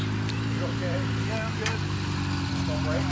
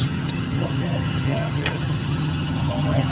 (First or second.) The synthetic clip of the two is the second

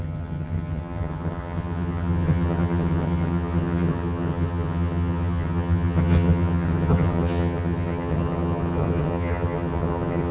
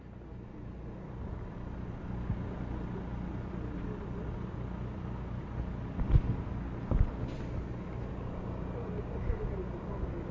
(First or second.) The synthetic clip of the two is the first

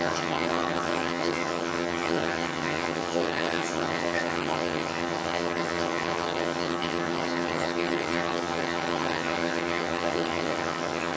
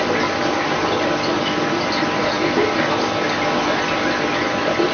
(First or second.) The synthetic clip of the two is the first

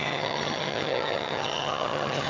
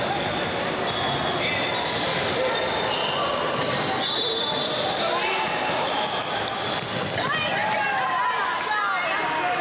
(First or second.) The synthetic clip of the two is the first